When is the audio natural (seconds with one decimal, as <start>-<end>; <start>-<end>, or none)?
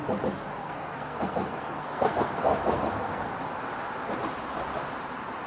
0.0-0.6; 3.3-5.5